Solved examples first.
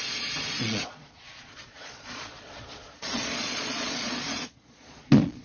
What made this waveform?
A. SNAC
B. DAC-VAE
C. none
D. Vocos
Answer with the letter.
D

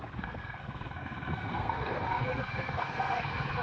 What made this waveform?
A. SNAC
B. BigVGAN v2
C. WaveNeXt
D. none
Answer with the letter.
A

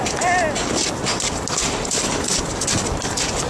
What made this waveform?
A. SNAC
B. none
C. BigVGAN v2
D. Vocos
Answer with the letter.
B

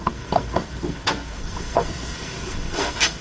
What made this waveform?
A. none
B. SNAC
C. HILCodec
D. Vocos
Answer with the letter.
B